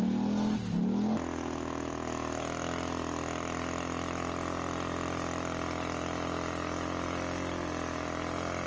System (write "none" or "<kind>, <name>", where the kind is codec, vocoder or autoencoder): none